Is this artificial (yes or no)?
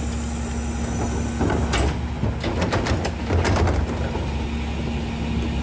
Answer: no